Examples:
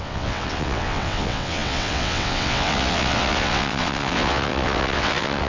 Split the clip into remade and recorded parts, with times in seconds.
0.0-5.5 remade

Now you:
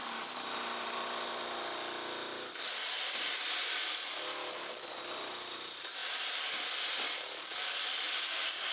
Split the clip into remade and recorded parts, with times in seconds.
0.0-8.7 recorded

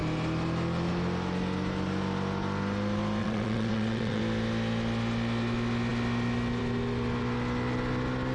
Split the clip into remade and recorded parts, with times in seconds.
0.0-3.2 recorded; 3.2-4.2 remade; 4.2-8.3 recorded

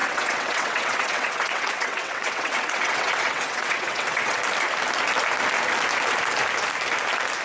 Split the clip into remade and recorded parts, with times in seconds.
0.0-4.4 remade; 4.4-7.4 recorded

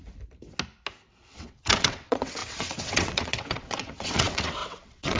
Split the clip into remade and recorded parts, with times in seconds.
0.0-1.2 recorded; 1.2-5.2 remade

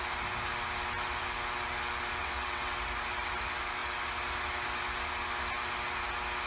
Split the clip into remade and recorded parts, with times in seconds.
0.0-2.2 recorded; 2.2-2.8 remade; 2.8-6.5 recorded

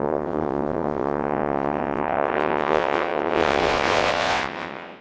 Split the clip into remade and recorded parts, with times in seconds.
0.0-5.0 remade